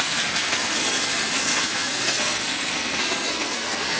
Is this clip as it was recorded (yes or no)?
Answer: no